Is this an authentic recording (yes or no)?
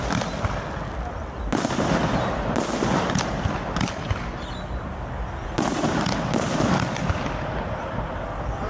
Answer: yes